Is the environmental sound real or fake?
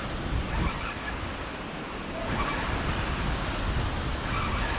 real